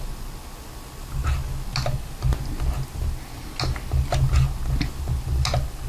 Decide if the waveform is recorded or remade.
recorded